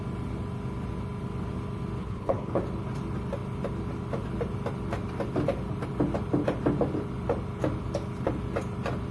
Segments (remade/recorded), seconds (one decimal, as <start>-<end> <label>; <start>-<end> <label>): 0.0-2.0 recorded; 2.0-2.6 remade; 2.6-9.1 recorded